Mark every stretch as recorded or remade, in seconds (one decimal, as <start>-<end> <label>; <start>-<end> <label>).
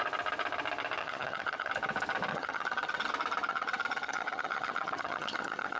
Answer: 0.0-1.0 recorded; 1.0-1.7 remade; 1.7-2.3 recorded; 2.3-3.1 remade; 3.1-3.5 recorded; 3.5-5.8 remade